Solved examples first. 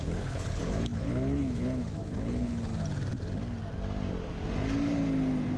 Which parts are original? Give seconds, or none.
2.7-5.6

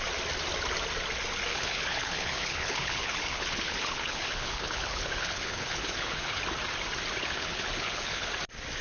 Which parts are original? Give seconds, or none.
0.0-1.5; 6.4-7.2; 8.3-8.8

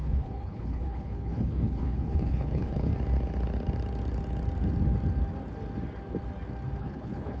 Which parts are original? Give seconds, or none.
2.9-6.8

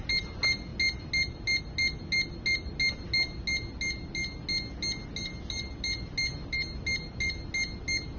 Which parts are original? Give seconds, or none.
0.0-8.2